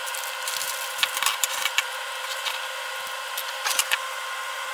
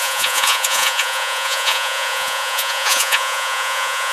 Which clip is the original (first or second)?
first